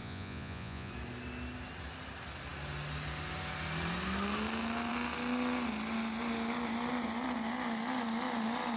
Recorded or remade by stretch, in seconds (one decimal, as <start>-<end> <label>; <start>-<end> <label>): 0.0-0.9 remade; 0.9-8.8 recorded